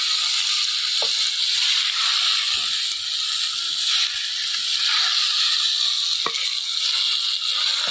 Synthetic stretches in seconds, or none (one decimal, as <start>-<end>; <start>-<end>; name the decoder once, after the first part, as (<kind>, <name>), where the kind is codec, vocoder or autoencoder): none